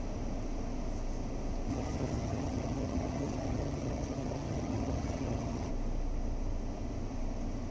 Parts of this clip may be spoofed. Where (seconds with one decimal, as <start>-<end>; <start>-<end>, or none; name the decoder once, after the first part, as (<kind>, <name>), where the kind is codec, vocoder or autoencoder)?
1.7-5.7 (vocoder, HiFi-GAN)